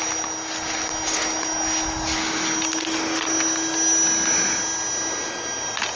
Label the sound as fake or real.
real